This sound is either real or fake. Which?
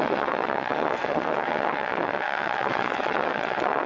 fake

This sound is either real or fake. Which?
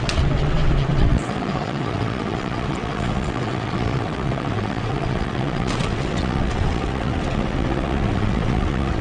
fake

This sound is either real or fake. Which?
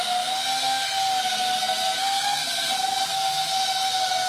fake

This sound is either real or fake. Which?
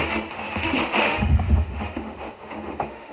fake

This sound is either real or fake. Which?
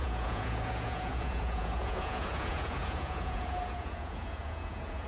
fake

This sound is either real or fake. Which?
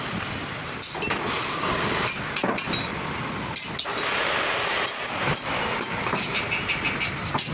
real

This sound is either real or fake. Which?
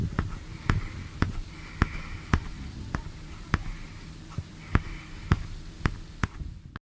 real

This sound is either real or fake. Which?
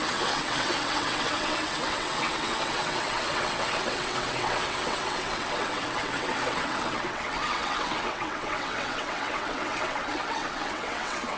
fake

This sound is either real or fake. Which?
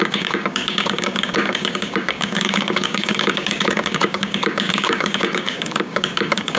fake